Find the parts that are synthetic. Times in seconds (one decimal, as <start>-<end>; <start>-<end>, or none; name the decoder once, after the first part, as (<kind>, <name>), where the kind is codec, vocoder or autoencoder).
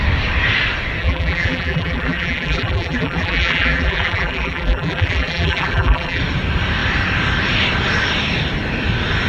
1.0-6.2 (vocoder, BigVGAN v2)